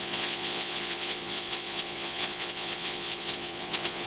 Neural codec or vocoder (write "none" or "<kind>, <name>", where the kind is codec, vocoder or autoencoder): vocoder, Vocos